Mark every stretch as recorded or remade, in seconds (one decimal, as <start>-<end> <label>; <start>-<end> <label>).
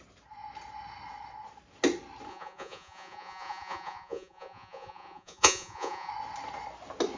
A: 0.0-2.3 recorded; 2.3-6.1 remade; 6.1-7.2 recorded